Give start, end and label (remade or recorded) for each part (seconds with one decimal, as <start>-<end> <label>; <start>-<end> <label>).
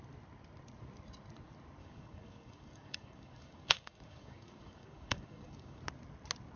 0.0-1.8 recorded; 1.8-5.8 remade; 5.8-6.6 recorded